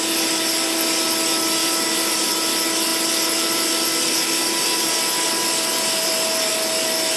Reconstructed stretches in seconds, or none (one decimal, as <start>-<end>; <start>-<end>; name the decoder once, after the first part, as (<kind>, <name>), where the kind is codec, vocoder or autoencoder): 1.6-2.3 (vocoder, BigVGAN v2)